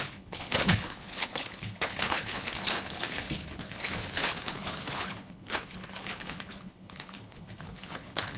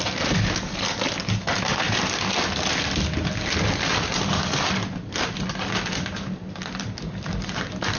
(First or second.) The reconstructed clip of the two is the first